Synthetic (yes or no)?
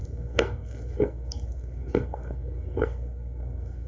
yes